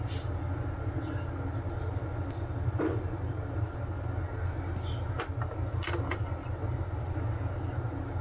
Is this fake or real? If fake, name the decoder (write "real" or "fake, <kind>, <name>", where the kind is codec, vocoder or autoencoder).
real